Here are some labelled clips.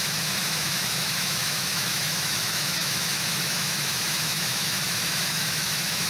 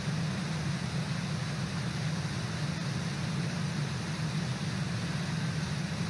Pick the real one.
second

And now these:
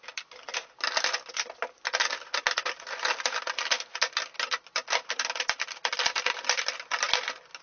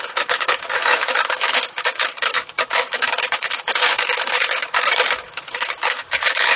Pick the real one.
first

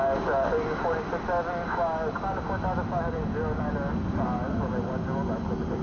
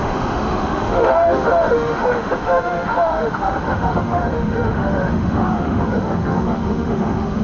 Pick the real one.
first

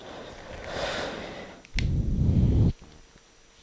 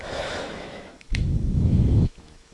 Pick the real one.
first